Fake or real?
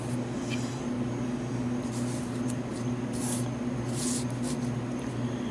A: real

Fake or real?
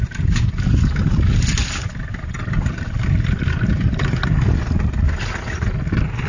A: real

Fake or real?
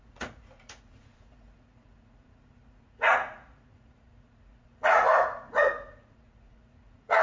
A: fake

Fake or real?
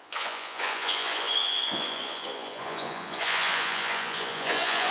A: fake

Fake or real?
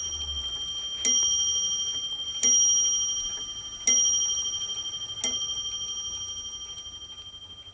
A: real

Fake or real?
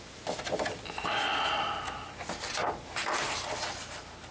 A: real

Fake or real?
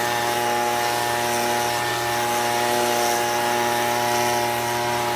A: real